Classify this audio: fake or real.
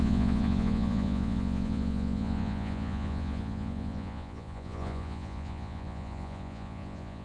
fake